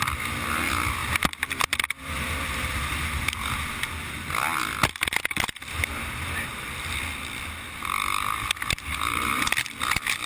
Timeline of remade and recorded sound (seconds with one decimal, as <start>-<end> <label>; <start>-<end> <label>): 0.0-10.3 recorded